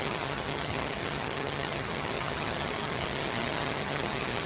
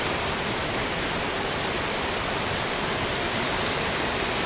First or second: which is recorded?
second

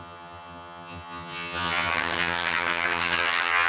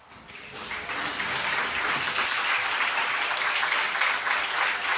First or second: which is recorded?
second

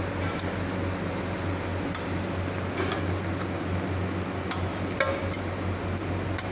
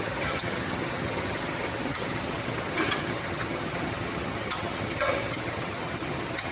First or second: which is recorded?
first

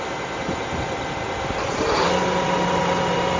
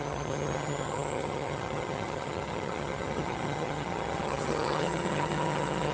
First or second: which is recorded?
first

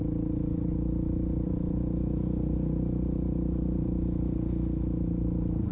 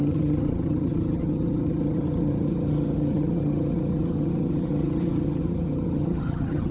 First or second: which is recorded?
first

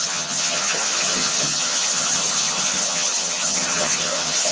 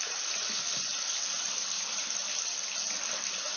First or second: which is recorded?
second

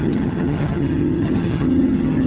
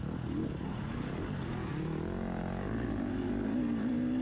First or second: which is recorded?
second